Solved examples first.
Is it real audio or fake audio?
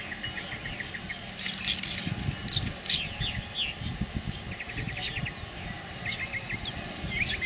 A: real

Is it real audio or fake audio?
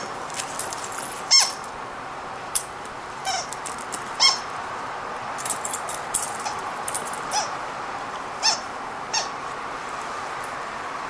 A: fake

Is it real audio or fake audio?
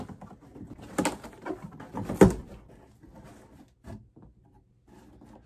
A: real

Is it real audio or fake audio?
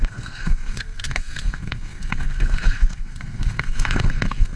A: fake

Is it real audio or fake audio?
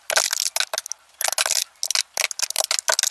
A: real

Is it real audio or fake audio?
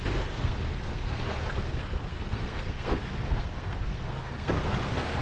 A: fake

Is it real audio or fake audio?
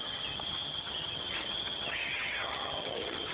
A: fake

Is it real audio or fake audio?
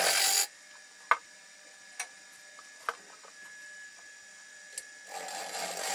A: real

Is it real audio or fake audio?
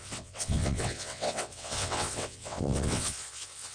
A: fake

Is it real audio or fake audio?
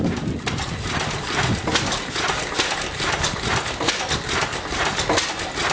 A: real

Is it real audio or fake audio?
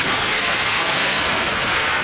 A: fake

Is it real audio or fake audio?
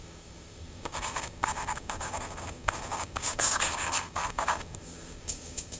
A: fake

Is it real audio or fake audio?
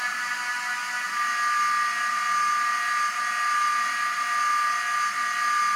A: real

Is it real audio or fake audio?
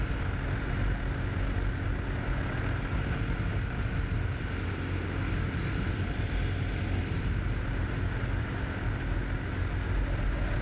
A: real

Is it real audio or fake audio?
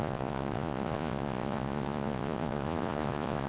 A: fake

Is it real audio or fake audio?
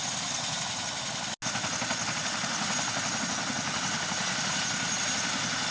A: real